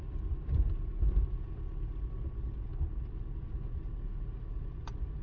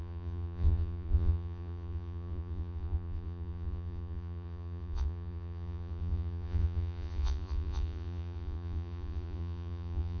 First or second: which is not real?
second